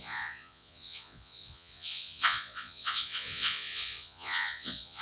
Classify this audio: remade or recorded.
remade